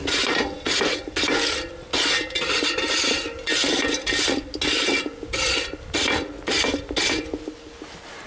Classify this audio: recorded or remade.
recorded